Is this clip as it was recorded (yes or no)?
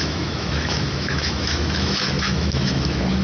no